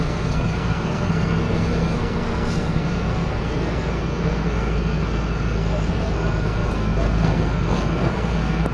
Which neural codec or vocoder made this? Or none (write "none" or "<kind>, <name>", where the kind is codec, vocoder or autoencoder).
codec, SNAC